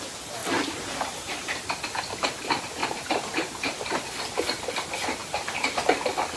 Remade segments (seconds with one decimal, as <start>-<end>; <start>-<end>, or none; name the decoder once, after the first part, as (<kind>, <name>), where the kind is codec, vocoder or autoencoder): 0.4-1.4 (vocoder, BigVGAN v2); 2.8-3.8; 5.2-5.8